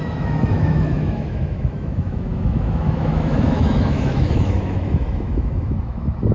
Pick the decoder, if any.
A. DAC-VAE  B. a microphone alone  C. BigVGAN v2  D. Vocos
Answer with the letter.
A